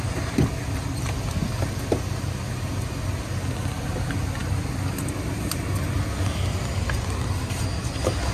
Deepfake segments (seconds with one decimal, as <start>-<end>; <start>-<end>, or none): none